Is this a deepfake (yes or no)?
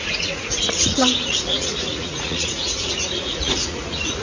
yes